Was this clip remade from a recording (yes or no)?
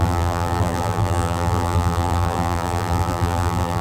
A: yes